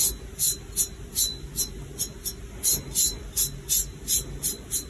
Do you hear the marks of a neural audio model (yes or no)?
no